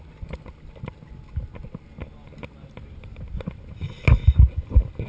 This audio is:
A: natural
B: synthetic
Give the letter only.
A